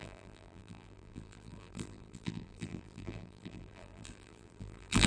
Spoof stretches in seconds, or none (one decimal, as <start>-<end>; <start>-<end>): 0.0-5.1